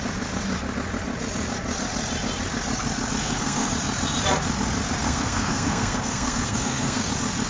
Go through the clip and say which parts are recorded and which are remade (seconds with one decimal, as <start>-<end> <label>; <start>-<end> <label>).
0.0-3.2 recorded; 3.2-3.7 remade; 3.7-5.0 recorded; 5.0-7.1 remade; 7.1-7.5 recorded